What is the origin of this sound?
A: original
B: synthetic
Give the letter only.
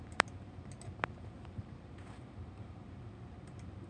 B